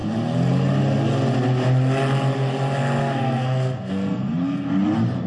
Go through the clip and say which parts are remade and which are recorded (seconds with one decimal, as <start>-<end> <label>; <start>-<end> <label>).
0.0-3.0 recorded; 3.0-4.7 remade; 4.7-5.3 recorded